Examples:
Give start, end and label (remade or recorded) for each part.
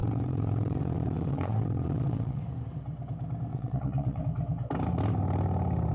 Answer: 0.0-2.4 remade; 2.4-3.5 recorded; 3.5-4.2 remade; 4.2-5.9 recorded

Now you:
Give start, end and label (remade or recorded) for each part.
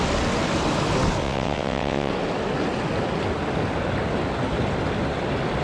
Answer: 0.0-1.2 recorded; 1.2-2.1 remade; 2.1-5.6 recorded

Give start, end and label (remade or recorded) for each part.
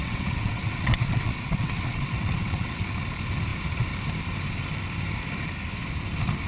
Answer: 0.0-2.8 remade; 2.8-6.5 recorded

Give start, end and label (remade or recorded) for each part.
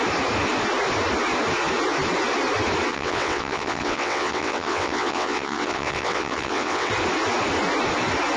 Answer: 0.0-2.9 recorded; 2.9-6.9 remade; 6.9-8.4 recorded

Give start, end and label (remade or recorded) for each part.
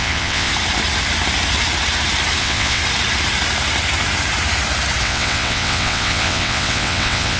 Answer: 0.0-0.5 remade; 0.5-2.4 recorded; 2.4-2.8 remade; 2.8-5.0 recorded; 5.0-7.4 remade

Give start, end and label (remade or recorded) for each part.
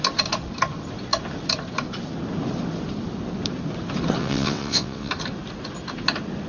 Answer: 0.0-4.2 recorded; 4.2-5.1 remade; 5.1-6.5 recorded